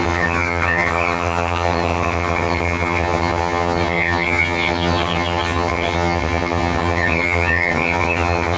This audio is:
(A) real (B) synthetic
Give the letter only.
B